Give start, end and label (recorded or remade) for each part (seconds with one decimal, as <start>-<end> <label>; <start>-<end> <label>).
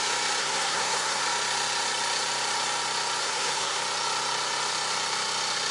0.0-0.4 recorded; 0.4-1.2 remade; 1.2-3.2 recorded; 3.2-3.8 remade; 3.8-5.7 recorded